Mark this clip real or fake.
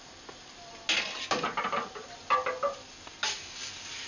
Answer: real